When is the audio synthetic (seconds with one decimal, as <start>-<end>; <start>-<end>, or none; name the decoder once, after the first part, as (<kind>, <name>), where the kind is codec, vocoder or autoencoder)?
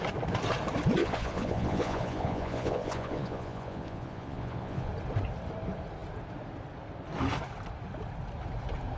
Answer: 1.0-4.9 (vocoder, Vocos)